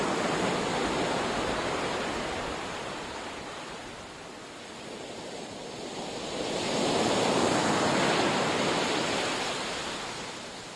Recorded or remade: recorded